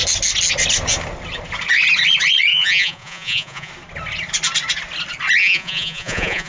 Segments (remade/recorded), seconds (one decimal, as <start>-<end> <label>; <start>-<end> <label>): 0.0-2.5 recorded; 2.5-3.7 remade; 3.7-5.4 recorded; 5.4-6.5 remade